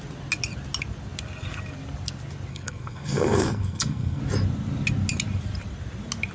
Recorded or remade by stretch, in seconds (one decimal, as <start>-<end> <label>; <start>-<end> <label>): 0.0-2.5 recorded; 2.5-4.2 remade; 4.2-6.3 recorded

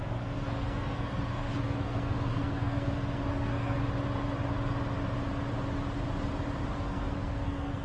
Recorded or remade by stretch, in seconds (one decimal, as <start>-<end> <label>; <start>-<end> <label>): 0.0-3.8 remade; 3.8-6.7 recorded; 6.7-7.8 remade

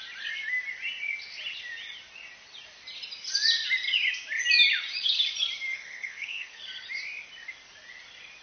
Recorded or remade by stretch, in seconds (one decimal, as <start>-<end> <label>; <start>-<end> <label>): 0.0-5.7 recorded; 5.7-6.6 remade; 6.6-8.4 recorded

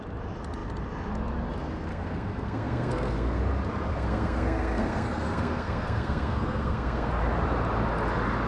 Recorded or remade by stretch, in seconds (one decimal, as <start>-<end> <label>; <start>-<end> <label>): 0.0-1.9 recorded; 1.9-3.4 remade; 3.4-3.9 recorded; 3.9-7.1 remade; 7.1-8.5 recorded

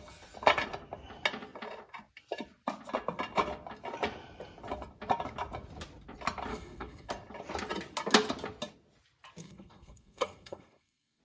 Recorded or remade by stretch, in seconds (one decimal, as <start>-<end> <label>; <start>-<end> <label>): 0.0-6.5 recorded; 6.5-7.1 remade; 7.1-9.4 recorded; 9.4-11.2 remade

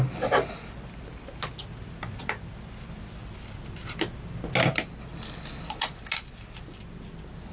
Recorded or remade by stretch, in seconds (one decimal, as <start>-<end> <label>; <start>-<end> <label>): 0.0-7.5 recorded

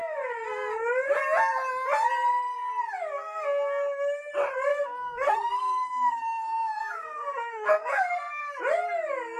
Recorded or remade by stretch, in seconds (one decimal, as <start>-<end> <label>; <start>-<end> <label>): 0.0-4.7 recorded; 4.7-8.4 remade; 8.4-9.4 recorded